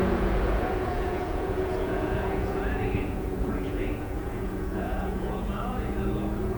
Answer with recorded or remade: remade